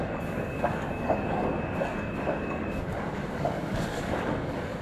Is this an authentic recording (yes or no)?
no